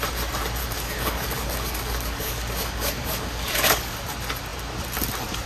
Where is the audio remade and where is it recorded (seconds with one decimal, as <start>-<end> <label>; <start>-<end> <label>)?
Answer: 0.0-0.6 recorded; 0.6-3.9 remade; 3.9-5.5 recorded